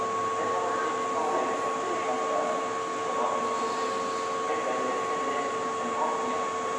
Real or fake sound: real